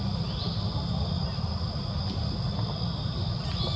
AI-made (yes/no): no